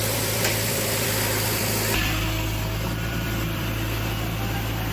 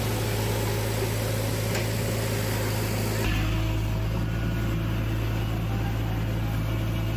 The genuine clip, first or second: second